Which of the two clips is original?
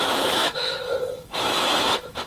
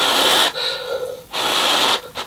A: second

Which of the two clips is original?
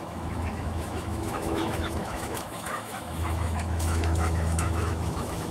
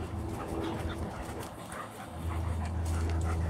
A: second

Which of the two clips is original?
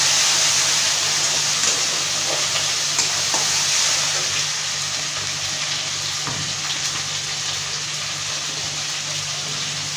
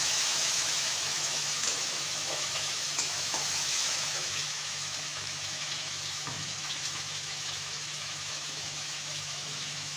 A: first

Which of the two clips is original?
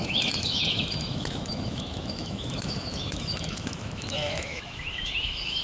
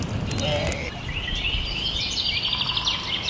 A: second